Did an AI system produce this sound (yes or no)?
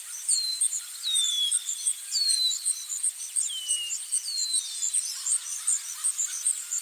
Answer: yes